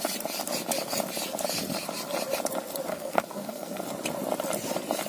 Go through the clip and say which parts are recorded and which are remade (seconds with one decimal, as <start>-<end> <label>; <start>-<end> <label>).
0.0-2.9 recorded; 2.9-3.8 remade; 3.8-5.1 recorded